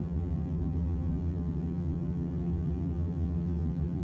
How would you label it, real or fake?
fake